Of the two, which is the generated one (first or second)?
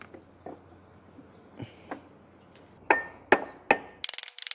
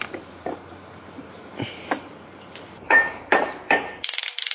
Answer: second